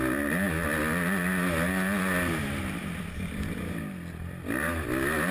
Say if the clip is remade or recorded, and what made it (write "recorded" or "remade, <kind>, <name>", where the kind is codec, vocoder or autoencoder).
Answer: recorded